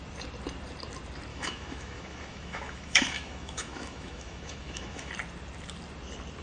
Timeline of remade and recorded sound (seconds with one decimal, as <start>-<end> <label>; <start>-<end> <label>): 0.0-1.3 recorded; 1.3-5.1 remade; 5.1-6.4 recorded